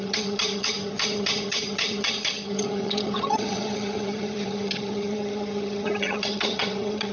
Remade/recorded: remade